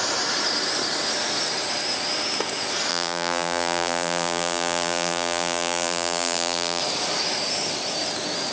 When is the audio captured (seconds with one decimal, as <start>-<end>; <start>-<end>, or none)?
0.0-2.9; 6.8-8.5

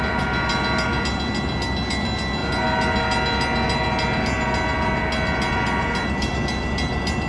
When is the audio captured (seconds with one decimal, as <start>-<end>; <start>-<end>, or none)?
0.0-7.3

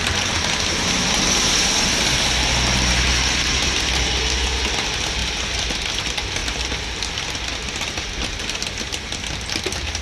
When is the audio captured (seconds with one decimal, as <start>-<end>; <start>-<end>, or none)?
0.0-10.0

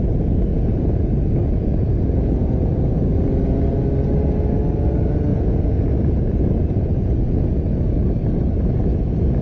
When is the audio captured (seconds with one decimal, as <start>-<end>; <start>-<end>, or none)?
0.0-0.5; 3.6-5.3; 7.5-9.4